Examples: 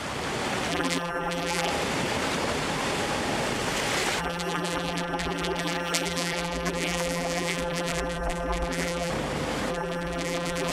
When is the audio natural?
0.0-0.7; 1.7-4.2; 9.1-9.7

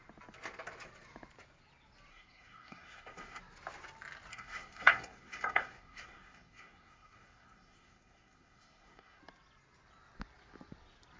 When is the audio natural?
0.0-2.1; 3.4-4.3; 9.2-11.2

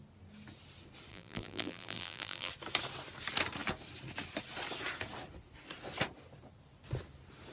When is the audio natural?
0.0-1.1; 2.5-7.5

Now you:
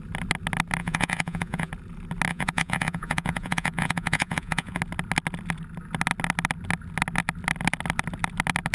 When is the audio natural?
0.0-0.8; 1.7-2.3; 4.8-8.7